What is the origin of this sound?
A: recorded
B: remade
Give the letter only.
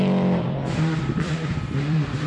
B